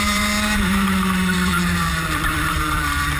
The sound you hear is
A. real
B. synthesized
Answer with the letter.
B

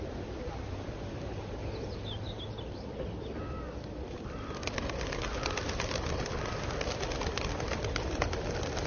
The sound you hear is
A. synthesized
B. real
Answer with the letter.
B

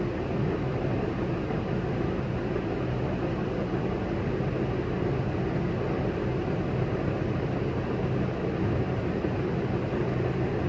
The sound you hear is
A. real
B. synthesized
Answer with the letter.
A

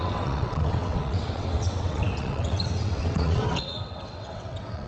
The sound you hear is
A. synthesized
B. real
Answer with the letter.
A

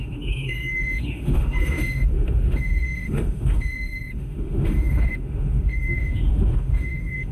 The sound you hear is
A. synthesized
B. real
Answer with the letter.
A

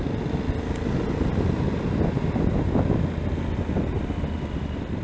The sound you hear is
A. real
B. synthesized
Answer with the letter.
A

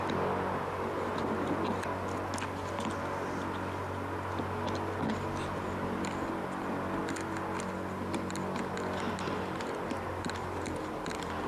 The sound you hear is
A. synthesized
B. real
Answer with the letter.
B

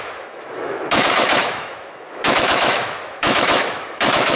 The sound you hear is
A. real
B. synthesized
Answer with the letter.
B